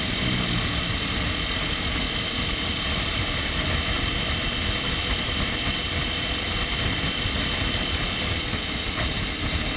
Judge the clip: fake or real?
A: real